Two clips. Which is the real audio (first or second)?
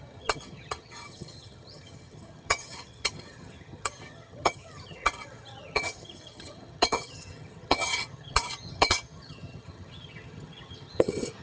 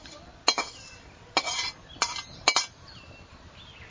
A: second